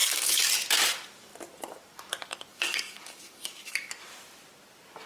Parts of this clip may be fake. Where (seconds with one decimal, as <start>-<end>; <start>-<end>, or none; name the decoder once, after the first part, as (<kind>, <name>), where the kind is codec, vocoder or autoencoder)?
0.0-0.5 (codec, DAC); 2.5-3.9